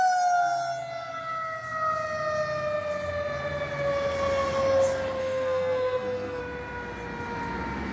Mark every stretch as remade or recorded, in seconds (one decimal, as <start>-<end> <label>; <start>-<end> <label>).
0.0-5.2 recorded; 5.2-6.4 remade; 6.4-7.9 recorded